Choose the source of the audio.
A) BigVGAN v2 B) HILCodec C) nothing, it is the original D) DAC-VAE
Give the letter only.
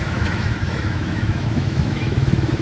D